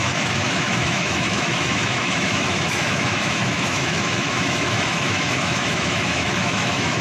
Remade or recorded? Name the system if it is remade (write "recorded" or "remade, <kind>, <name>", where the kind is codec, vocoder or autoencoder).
remade, autoencoder, DAC-VAE